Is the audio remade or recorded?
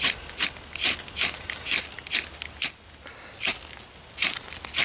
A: recorded